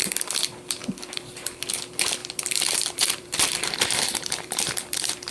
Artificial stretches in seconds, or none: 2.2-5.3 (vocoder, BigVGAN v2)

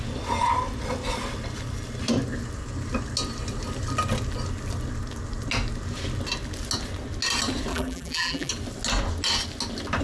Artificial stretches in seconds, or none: 7.7-8.5 (vocoder, BigVGAN v2)

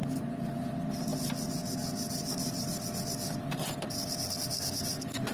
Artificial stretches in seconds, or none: none